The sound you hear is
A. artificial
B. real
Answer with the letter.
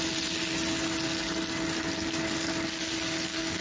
B